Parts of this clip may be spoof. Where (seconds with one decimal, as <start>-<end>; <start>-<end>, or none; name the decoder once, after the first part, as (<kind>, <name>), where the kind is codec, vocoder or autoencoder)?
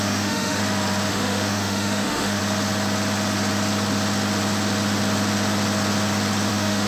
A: 0.0-0.6 (autoencoder, DAC-VAE); 1.1-2.4; 6.5-6.9